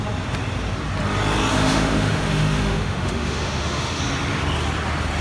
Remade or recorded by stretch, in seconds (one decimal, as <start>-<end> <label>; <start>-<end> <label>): 0.0-1.5 recorded; 1.5-4.0 remade; 4.0-5.2 recorded